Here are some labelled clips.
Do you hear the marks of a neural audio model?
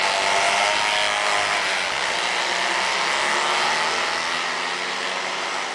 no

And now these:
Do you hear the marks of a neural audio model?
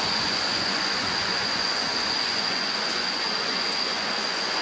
yes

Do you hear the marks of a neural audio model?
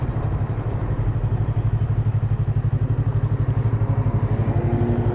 no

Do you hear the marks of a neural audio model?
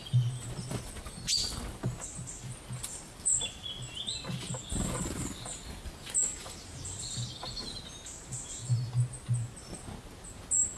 no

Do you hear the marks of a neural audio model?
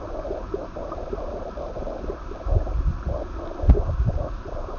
no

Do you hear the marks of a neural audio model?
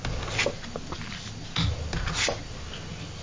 no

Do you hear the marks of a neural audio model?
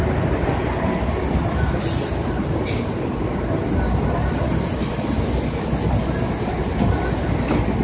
no